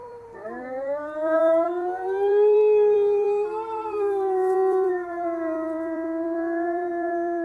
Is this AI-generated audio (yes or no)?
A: yes